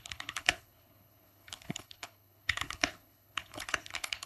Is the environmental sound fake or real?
fake